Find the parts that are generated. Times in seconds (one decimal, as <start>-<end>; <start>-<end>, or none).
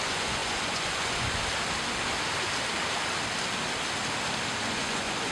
0.0-1.4; 4.6-5.3